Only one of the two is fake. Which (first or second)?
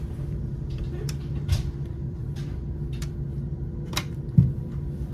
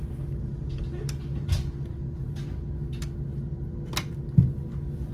first